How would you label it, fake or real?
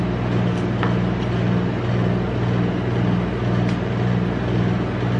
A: real